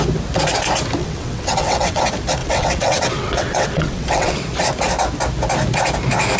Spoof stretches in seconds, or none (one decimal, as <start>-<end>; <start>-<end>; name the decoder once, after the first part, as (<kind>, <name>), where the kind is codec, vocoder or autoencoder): 1.0-2.0 (vocoder, WaveNeXt); 2.4-4.4